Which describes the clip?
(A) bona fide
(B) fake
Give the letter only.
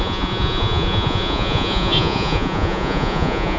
B